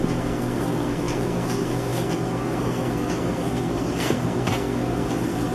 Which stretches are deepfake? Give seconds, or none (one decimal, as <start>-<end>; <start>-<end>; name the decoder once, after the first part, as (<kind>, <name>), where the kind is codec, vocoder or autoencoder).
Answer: 0.0-5.5 (codec, SNAC)